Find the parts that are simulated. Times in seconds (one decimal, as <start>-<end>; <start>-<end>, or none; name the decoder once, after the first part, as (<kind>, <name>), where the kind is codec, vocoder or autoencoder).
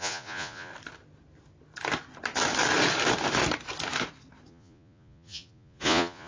0.0-0.7 (vocoder, Vocos); 4.5-6.3